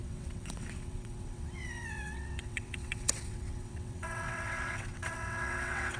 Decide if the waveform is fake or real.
fake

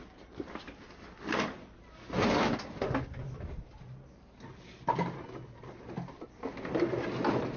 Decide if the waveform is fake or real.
real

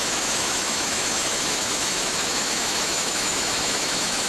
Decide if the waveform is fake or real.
fake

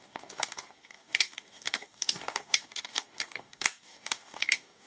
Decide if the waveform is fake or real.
fake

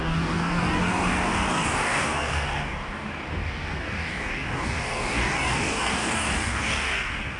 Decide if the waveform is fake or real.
fake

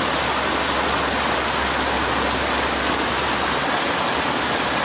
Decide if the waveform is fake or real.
real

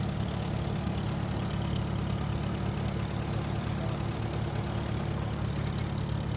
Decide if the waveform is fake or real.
real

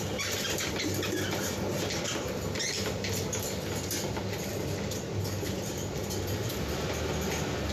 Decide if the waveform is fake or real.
real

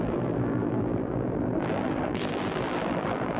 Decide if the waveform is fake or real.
fake